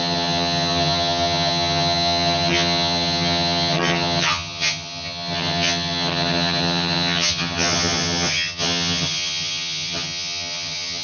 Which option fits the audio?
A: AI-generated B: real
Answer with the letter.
A